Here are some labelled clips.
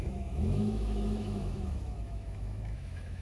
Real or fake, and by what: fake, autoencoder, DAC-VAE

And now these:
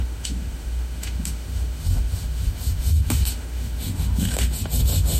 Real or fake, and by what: fake, autoencoder, DAC-VAE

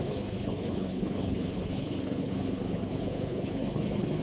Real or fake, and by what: fake, codec, HILCodec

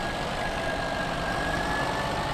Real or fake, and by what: fake, vocoder, BigVGAN v2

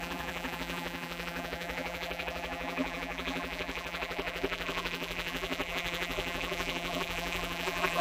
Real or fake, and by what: fake, vocoder, BigVGAN v2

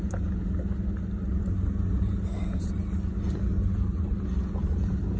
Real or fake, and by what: real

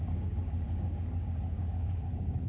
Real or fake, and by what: fake, codec, DAC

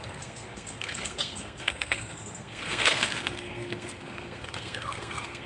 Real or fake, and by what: fake, codec, SNAC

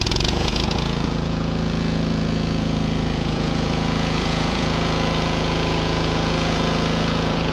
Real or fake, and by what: fake, vocoder, Vocos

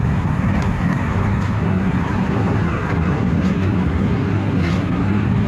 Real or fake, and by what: fake, codec, SNAC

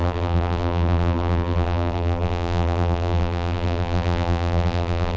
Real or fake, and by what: fake, vocoder, BigVGAN v2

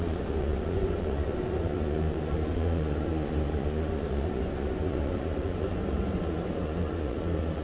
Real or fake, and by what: fake, vocoder, Vocos